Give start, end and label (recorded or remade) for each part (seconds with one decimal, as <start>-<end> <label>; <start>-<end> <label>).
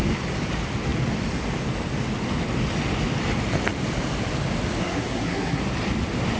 0.0-4.8 recorded; 4.8-5.6 remade; 5.6-6.4 recorded